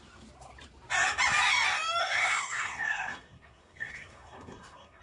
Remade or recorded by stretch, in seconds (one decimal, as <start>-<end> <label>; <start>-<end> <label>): 0.0-2.0 recorded; 2.0-5.0 remade

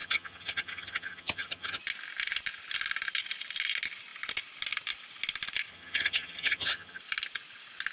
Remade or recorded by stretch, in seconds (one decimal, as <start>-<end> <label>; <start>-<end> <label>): 0.0-1.8 remade; 1.8-5.7 recorded; 5.7-7.0 remade; 7.0-7.9 recorded